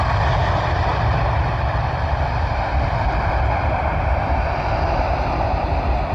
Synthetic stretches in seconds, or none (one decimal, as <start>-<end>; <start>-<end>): none